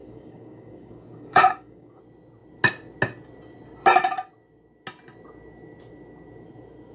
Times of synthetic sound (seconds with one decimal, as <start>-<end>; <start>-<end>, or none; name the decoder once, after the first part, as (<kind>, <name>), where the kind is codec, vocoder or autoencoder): 0.0-2.0 (codec, DAC)